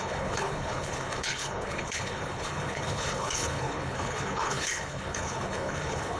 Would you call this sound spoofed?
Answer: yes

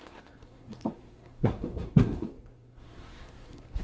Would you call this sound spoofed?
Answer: yes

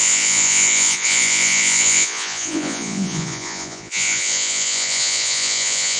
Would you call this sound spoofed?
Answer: yes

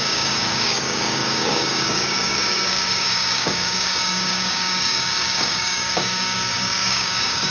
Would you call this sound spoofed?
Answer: yes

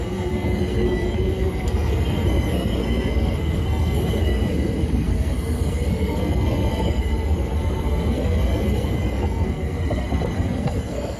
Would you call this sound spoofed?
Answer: yes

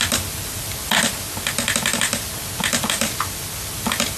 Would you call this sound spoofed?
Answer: no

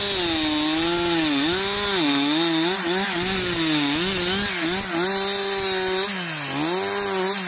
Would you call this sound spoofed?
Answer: no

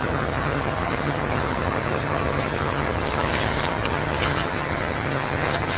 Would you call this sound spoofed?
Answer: yes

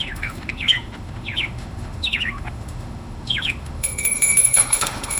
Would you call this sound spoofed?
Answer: yes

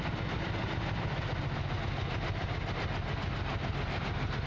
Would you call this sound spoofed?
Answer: no